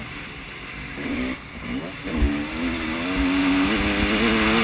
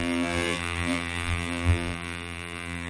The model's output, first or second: second